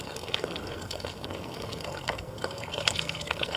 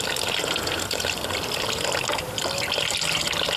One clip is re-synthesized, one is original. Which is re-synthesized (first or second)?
first